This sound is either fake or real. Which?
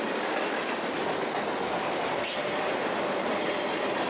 real